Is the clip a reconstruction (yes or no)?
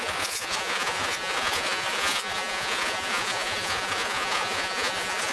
yes